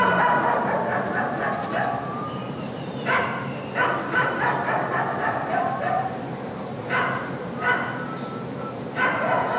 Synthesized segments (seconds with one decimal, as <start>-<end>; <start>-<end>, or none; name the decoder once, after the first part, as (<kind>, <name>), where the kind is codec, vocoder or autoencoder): 1.6-3.6 (vocoder, BigVGAN v2); 5.1-6.5